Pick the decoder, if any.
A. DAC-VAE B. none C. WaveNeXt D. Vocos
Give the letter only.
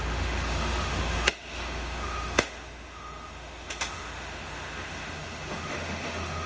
A